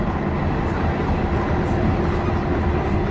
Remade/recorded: recorded